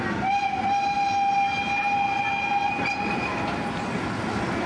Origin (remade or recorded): recorded